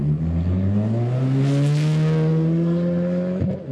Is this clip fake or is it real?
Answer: real